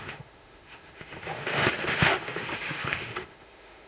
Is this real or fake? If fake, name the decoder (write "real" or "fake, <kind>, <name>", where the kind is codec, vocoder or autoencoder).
fake, autoencoder, DAC-VAE